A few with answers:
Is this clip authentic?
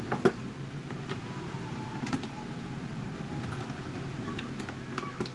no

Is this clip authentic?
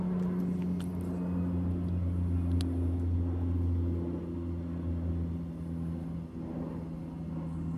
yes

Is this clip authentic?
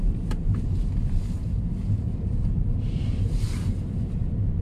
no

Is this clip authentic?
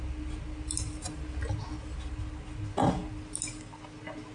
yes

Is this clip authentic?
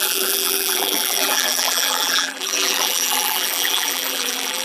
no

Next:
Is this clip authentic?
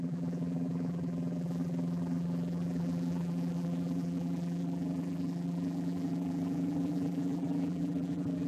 no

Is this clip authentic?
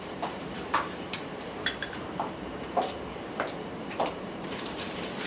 no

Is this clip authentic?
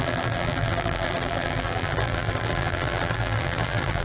no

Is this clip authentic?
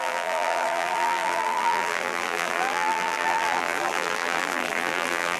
no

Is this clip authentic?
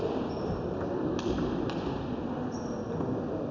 yes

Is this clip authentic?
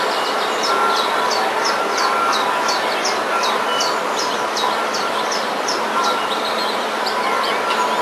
no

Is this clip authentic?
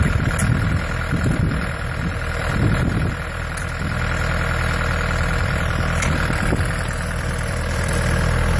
no